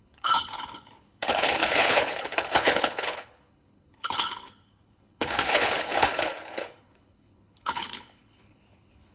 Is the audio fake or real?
fake